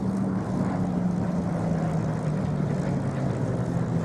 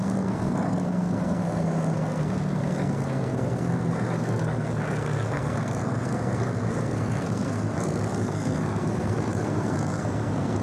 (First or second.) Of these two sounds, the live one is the first